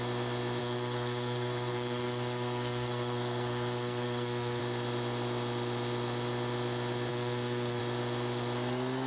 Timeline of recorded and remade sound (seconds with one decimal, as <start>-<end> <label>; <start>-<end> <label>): 0.0-0.6 recorded; 0.6-4.6 remade; 4.6-7.1 recorded; 7.1-7.8 remade; 7.8-9.1 recorded